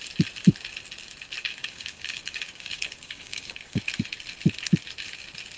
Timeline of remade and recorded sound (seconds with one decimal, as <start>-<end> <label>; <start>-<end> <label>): 0.0-1.5 recorded; 1.5-3.8 remade; 3.8-5.6 recorded